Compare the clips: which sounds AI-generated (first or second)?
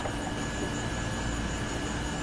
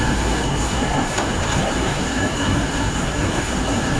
second